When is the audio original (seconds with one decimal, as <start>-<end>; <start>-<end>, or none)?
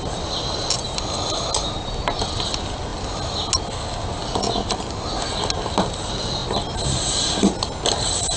0.0-8.4